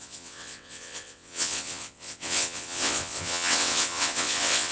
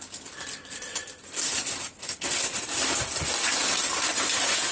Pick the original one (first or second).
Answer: second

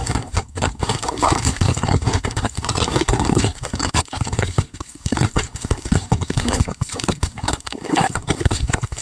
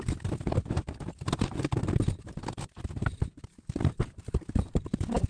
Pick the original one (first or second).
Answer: second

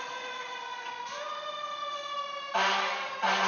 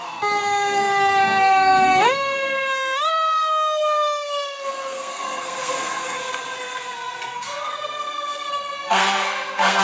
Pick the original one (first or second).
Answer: first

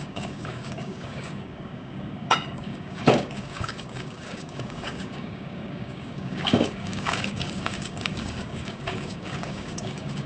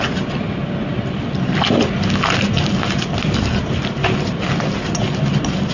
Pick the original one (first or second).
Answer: second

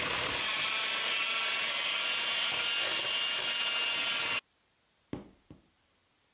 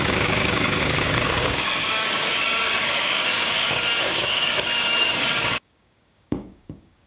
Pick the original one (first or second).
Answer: first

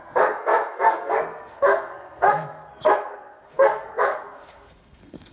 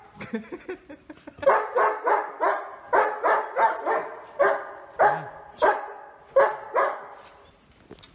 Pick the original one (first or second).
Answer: second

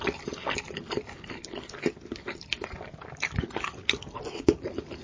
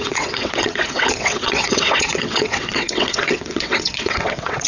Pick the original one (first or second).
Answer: first